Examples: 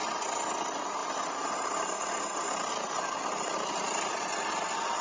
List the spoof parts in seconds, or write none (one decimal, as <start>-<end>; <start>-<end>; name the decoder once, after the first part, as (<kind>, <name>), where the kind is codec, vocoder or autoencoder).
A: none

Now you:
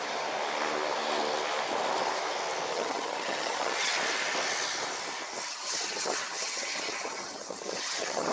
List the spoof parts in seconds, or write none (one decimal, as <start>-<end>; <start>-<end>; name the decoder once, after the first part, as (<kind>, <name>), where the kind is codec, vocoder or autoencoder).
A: 2.7-3.9 (vocoder, HiFi-GAN); 5.5-8.3

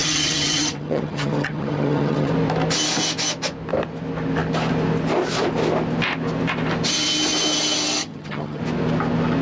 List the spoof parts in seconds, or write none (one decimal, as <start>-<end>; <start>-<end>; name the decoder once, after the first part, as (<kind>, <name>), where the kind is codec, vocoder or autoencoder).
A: 0.0-2.3 (vocoder, HiFi-GAN); 8.0-8.6

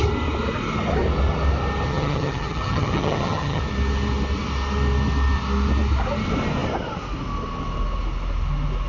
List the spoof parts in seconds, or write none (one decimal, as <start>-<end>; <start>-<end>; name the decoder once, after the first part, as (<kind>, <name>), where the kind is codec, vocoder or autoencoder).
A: 1.9-3.6 (vocoder, HiFi-GAN)

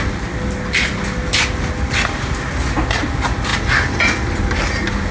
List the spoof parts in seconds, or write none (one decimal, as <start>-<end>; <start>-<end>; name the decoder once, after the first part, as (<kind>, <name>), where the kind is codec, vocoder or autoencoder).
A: none

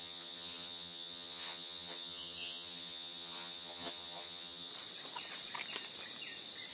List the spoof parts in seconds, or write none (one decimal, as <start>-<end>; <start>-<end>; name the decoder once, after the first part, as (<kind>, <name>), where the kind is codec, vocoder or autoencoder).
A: 0.0-4.7 (vocoder, HiFi-GAN)